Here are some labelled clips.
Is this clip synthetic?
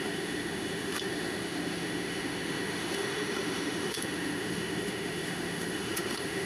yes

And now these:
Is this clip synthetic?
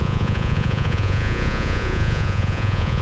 yes